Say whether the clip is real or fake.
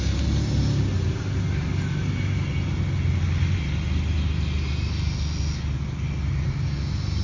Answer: real